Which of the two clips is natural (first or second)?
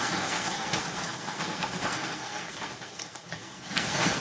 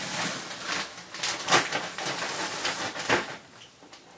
second